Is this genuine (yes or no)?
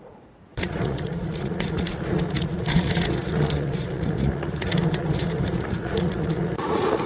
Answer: no